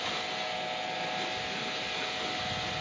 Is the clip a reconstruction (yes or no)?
no